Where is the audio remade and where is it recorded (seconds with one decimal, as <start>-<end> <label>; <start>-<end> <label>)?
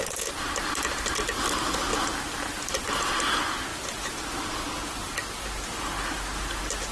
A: 0.0-6.9 recorded